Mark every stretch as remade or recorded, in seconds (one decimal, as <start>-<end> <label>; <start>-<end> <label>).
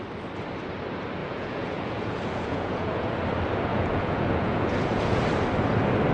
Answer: 0.0-1.2 recorded; 1.2-3.2 remade; 3.2-3.7 recorded; 3.7-5.2 remade; 5.2-6.1 recorded